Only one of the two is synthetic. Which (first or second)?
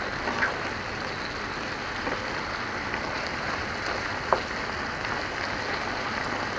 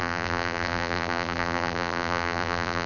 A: second